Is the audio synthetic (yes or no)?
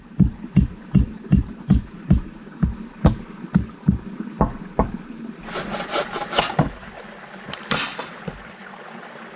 no